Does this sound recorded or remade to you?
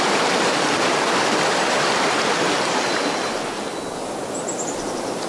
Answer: recorded